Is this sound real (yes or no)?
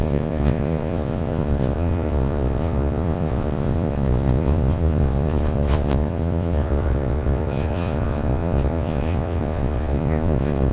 no